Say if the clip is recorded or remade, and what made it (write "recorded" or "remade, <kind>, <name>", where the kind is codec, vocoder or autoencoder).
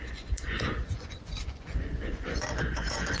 remade, vocoder, Vocos